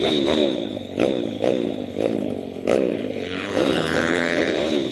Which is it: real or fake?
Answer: fake